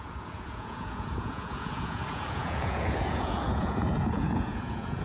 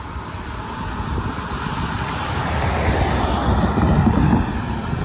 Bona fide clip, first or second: second